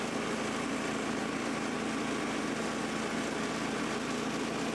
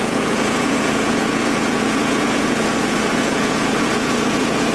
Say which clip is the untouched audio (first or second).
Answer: first